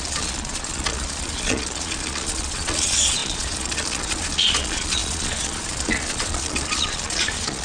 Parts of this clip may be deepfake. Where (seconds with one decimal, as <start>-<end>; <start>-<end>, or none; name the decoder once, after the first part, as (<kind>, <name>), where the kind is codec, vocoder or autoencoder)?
0.0-7.6 (vocoder, Vocos)